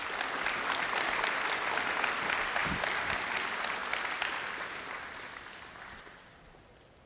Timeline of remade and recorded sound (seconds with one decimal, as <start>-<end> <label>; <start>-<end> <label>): 0.0-7.1 recorded